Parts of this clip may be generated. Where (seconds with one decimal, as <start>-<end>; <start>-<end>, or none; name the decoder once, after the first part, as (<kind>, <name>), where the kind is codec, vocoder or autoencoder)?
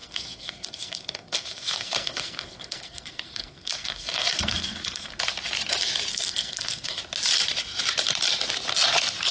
0.0-5.1 (codec, SNAC); 6.1-7.0